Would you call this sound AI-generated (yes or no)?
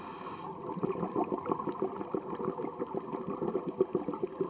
no